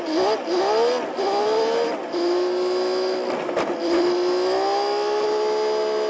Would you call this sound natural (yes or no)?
yes